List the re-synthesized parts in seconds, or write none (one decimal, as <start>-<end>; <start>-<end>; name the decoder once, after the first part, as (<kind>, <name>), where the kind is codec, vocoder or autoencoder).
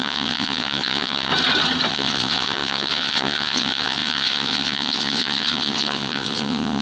0.0-1.3 (vocoder, WaveNeXt); 1.9-6.8